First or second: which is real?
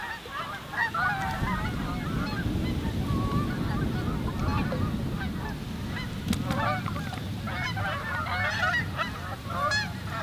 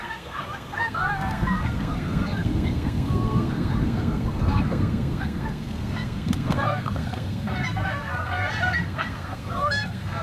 first